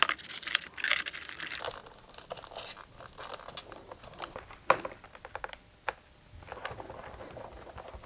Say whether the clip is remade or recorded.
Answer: recorded